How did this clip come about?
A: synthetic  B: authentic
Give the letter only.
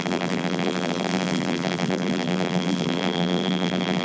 A